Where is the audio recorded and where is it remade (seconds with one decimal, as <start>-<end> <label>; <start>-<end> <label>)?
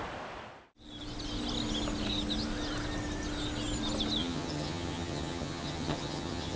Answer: 0.0-4.2 recorded; 4.2-6.6 remade